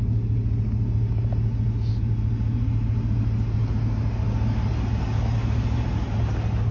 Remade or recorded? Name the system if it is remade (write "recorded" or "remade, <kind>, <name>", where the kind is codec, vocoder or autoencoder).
recorded